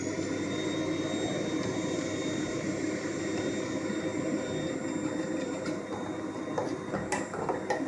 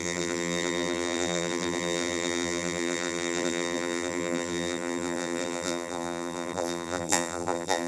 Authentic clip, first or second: first